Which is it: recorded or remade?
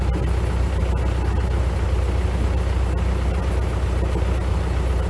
recorded